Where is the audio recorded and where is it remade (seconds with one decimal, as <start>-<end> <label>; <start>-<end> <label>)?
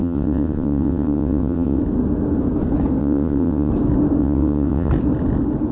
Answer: 0.0-1.8 remade; 1.8-3.0 recorded; 3.0-3.7 remade; 3.7-4.2 recorded; 4.2-4.9 remade; 4.9-5.7 recorded